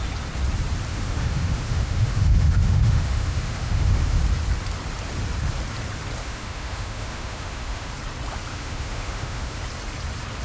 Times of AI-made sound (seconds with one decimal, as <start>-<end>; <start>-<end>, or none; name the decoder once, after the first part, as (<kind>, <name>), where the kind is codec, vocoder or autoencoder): 0.9-4.2 (autoencoder, DAC-VAE); 6.2-7.9; 8.5-9.6